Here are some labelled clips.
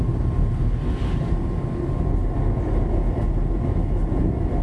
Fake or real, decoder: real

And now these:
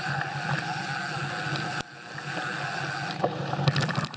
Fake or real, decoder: real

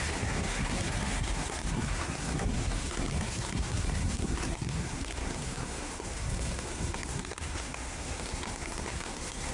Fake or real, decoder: fake, codec, SNAC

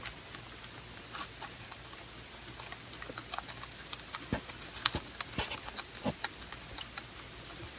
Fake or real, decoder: real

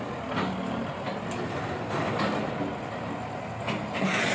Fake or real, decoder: real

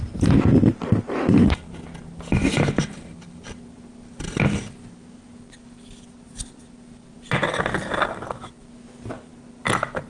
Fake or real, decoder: real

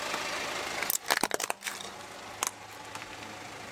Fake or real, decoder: real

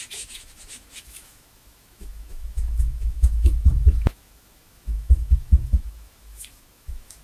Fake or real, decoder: fake, autoencoder, DAC-VAE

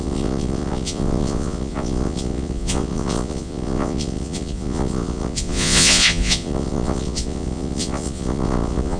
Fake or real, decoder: fake, vocoder, Vocos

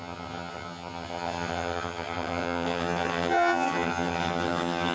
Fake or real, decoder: fake, vocoder, HiFi-GAN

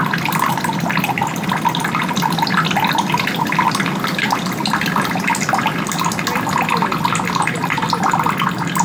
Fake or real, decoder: real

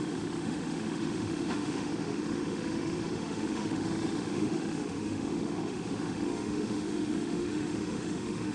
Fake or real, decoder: fake, autoencoder, DAC-VAE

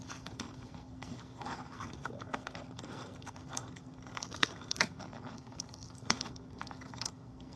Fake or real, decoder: fake, codec, SNAC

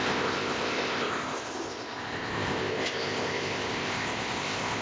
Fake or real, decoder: fake, codec, ZipCodec